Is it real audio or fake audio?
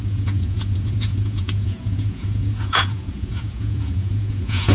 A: fake